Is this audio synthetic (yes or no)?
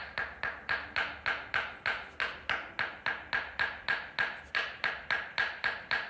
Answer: no